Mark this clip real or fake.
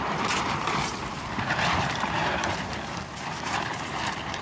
fake